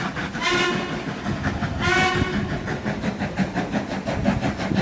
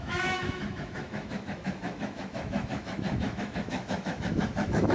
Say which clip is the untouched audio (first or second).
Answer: first